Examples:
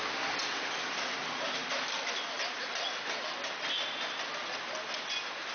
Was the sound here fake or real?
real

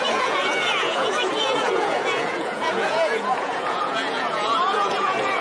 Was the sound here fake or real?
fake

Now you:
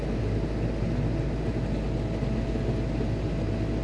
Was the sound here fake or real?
real